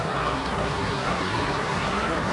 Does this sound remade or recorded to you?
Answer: remade